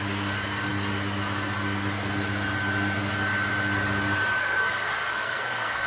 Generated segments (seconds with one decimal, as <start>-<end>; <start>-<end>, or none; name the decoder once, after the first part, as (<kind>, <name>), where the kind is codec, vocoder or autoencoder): 4.4-5.9 (codec, SNAC)